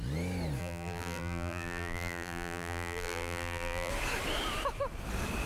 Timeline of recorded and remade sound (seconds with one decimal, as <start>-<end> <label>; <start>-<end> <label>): 0.0-0.6 recorded; 0.6-3.9 remade; 3.9-5.5 recorded